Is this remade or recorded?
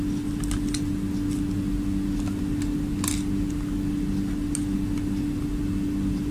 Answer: recorded